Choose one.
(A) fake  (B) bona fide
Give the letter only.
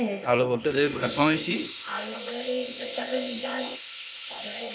A